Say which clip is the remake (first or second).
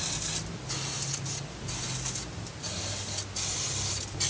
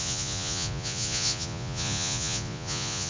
second